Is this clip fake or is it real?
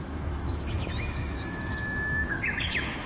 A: fake